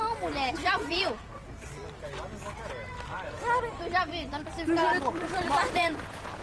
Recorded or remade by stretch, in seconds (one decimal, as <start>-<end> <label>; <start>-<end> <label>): 0.0-0.5 recorded; 0.5-1.3 remade; 1.3-5.1 recorded; 5.1-6.4 remade